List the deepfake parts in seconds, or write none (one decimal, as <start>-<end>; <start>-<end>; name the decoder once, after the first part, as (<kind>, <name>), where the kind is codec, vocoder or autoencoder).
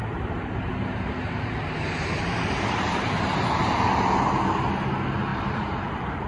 0.0-3.7 (vocoder, BigVGAN v2); 5.3-6.3